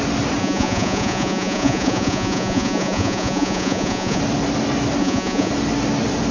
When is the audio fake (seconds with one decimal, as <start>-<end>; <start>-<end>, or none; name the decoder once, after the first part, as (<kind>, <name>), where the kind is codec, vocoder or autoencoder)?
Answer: 0.4-4.2 (vocoder, Vocos); 5.0-5.5